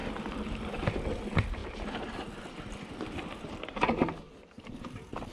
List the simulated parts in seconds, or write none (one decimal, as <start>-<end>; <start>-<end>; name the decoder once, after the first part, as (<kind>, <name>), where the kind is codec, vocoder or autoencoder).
0.0-1.6 (vocoder, BigVGAN v2); 4.3-5.3